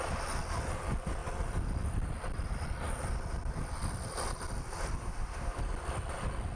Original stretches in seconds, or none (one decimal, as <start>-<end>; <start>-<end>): 0.0-5.0; 5.6-6.6